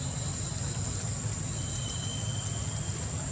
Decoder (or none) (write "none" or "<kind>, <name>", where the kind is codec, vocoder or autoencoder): none